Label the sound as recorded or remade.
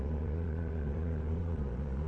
remade